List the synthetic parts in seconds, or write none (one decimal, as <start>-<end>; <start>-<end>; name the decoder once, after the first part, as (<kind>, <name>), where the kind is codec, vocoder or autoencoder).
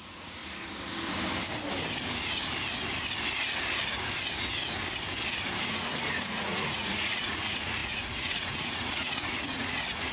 0.0-0.4 (vocoder, Vocos); 5.6-10.1